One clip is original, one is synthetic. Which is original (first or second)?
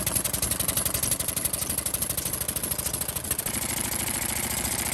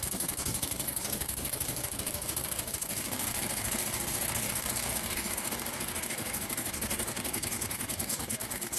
first